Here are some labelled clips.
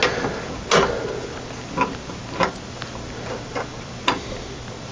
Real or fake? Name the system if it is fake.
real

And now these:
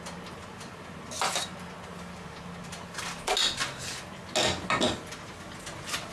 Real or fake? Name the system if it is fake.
real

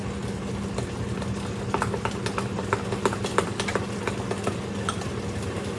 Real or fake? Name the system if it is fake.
real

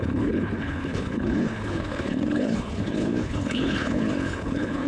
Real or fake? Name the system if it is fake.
fake, codec, HILCodec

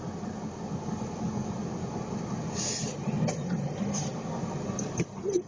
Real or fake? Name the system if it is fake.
real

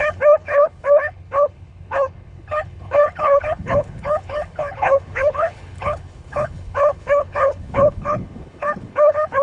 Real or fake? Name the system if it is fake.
fake, codec, HILCodec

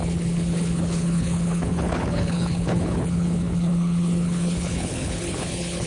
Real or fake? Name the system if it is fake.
fake, codec, HILCodec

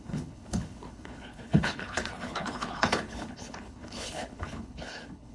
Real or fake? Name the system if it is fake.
fake, codec, HILCodec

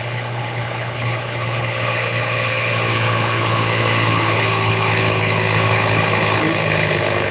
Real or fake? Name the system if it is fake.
fake, codec, HILCodec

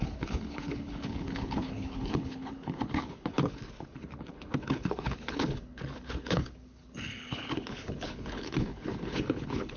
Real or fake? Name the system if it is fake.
fake, codec, HILCodec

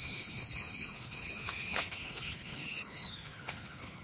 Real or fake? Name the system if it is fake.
fake, codec, HILCodec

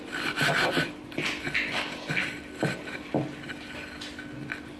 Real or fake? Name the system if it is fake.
real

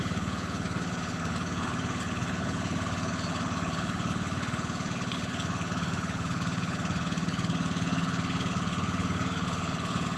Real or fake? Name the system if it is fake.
fake, codec, HILCodec